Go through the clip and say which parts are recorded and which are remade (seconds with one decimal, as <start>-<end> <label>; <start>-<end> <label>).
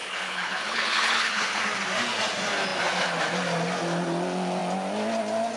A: 0.0-1.6 remade; 1.6-5.6 recorded